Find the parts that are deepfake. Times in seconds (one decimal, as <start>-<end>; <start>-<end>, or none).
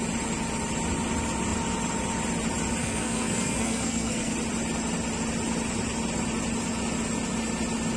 2.8-4.3